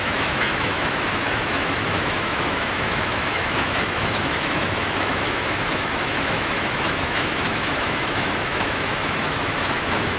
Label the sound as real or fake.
fake